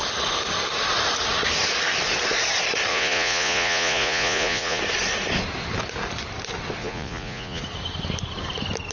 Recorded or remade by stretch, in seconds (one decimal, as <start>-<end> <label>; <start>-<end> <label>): 0.0-2.9 recorded; 2.9-4.8 remade; 4.8-6.8 recorded; 6.8-7.6 remade; 7.6-8.9 recorded